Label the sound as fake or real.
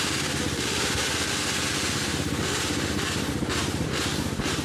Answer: fake